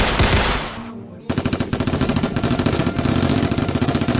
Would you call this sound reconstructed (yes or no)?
no